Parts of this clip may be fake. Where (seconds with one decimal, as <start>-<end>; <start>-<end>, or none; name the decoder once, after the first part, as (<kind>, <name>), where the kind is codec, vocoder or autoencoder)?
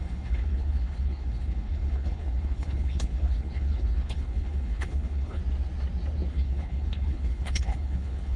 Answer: 0.0-5.4 (codec, HILCodec); 6.3-8.4